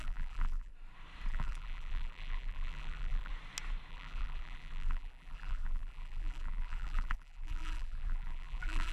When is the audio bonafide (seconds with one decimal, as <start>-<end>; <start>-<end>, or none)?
0.7-1.3; 3.3-3.9